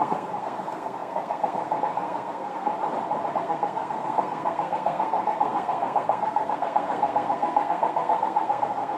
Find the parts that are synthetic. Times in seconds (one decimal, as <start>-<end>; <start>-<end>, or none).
0.0-2.7; 3.3-9.0